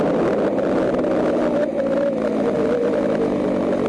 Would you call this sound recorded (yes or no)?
yes